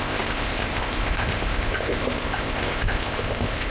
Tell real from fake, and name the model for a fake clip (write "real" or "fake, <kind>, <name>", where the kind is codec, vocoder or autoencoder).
fake, codec, ZipCodec